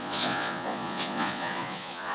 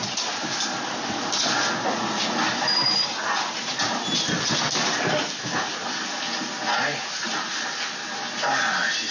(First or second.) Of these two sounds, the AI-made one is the first